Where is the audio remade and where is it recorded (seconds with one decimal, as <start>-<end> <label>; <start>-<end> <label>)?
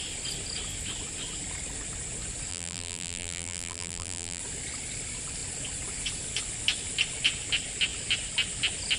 0.0-2.5 recorded; 2.5-4.4 remade; 4.4-9.0 recorded